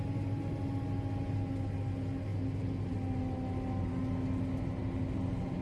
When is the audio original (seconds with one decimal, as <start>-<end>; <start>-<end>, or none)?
0.0-5.6